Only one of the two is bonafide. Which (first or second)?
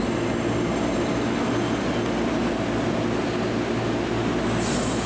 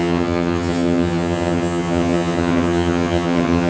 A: first